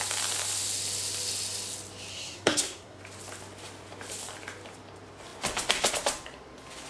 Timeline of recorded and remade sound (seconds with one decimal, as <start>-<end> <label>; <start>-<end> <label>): 0.0-2.1 recorded; 2.1-3.0 remade; 3.0-6.9 recorded

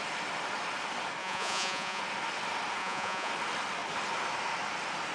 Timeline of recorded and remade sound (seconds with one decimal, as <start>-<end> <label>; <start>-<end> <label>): 0.0-1.2 recorded; 1.2-2.0 remade; 2.0-2.8 recorded; 2.8-3.3 remade; 3.3-5.1 recorded

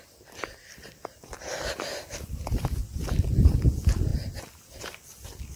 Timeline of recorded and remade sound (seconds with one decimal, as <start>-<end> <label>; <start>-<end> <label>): 0.0-5.6 recorded

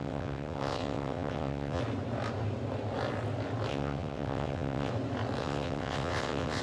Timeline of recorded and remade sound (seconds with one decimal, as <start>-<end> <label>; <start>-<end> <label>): 0.0-1.8 remade; 1.8-3.7 recorded; 3.7-4.9 remade; 4.9-5.4 recorded; 5.4-6.6 remade

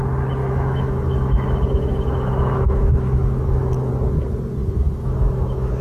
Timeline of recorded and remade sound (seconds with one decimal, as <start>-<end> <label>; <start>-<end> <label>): 0.0-0.4 recorded; 0.4-3.9 remade; 3.9-4.6 recorded; 4.6-5.8 remade

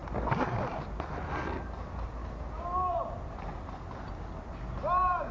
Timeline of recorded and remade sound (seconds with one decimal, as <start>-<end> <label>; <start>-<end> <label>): 0.0-5.3 recorded